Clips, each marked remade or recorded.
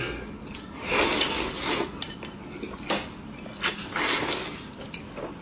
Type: recorded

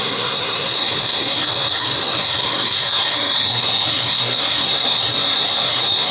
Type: remade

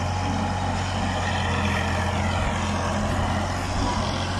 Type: recorded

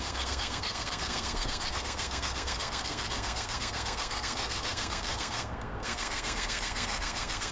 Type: remade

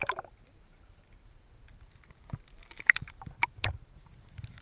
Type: recorded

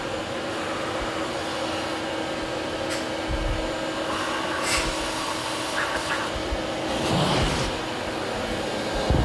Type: recorded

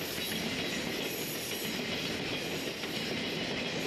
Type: recorded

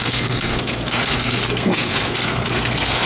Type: remade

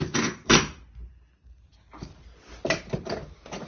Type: recorded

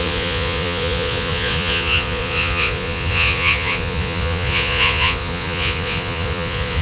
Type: remade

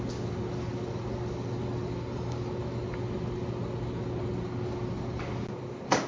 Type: recorded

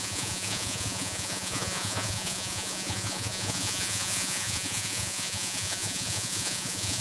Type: remade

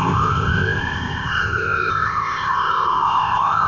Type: remade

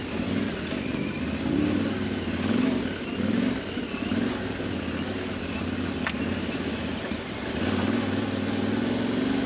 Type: recorded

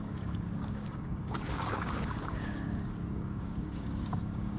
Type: remade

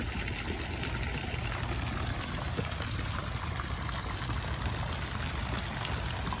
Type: recorded